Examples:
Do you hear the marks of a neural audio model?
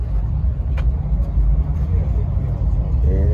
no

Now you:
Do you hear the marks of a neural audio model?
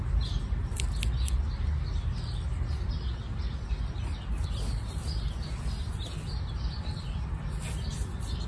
no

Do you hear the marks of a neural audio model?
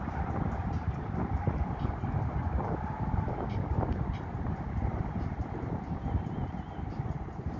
no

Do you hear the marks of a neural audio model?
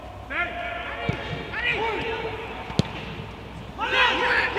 no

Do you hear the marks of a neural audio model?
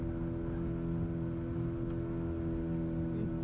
no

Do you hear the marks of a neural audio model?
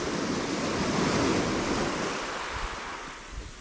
no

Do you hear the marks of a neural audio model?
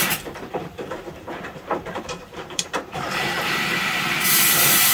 yes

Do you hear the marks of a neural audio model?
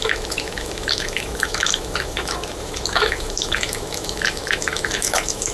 yes